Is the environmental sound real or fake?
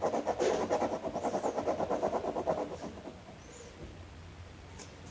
real